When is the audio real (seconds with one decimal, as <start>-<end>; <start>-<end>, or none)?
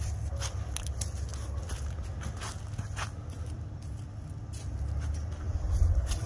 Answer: 0.0-6.3